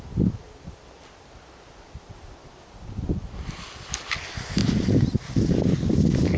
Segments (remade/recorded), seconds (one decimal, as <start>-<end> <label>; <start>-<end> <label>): 0.0-6.4 recorded